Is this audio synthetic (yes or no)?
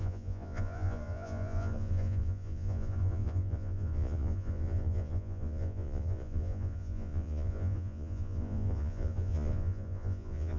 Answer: yes